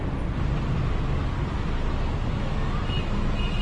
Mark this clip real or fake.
real